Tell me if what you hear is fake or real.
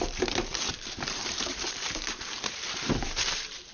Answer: fake